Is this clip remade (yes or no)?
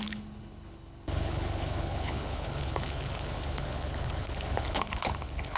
yes